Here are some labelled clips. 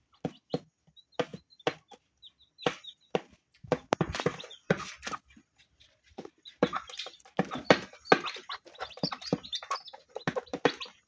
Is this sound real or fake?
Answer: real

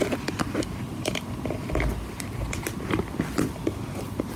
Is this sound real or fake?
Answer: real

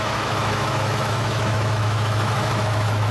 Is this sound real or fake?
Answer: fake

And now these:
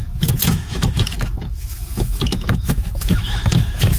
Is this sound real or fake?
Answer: fake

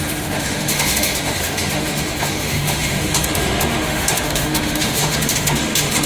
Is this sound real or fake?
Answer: fake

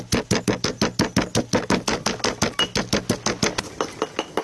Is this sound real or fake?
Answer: real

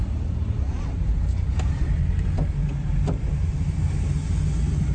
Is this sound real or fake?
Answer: real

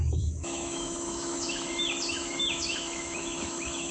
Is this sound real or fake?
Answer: fake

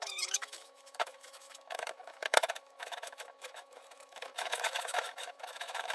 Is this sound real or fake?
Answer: fake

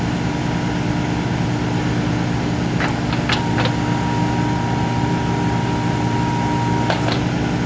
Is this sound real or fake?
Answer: real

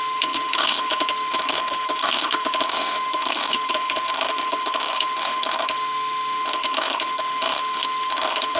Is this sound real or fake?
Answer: fake